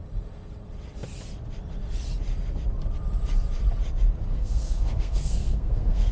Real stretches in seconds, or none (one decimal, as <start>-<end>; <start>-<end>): 0.0-4.3